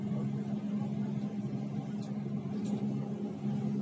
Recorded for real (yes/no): yes